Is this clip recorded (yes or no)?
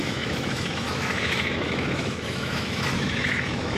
no